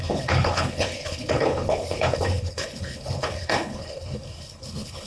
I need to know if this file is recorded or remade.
remade